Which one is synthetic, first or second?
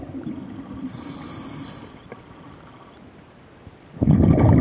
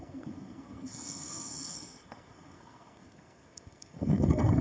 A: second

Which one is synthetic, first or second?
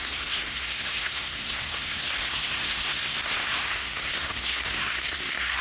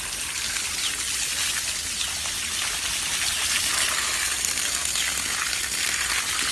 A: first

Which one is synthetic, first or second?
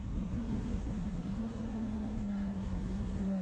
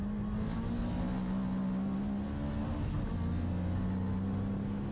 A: first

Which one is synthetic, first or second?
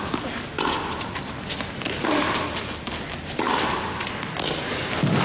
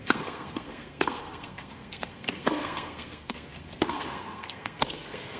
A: second